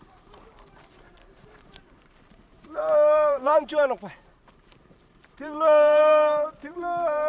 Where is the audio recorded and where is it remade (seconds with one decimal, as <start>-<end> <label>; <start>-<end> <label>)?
0.0-7.3 remade